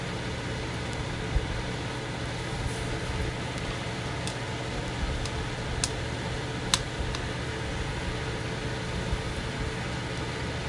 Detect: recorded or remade recorded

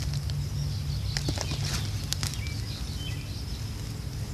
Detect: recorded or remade recorded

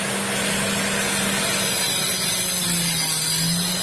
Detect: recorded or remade recorded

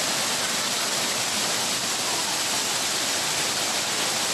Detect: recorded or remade recorded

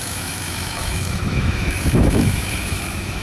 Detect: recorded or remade remade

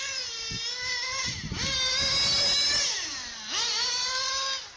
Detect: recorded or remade recorded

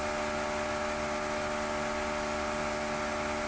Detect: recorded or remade recorded